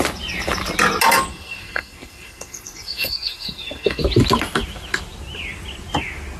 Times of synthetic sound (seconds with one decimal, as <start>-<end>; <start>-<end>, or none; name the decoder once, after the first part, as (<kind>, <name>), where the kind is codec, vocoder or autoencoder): 1.3-4.0 (codec, SNAC)